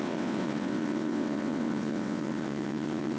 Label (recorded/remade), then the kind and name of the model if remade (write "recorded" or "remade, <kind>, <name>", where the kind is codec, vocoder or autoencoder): remade, vocoder, WaveNeXt